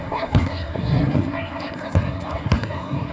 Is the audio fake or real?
fake